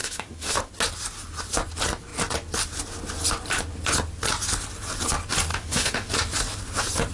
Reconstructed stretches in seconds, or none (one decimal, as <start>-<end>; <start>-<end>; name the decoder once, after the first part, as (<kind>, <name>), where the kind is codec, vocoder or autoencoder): 0.0-0.7 (autoencoder, DAC-VAE); 5.5-6.1